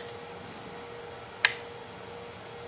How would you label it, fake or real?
real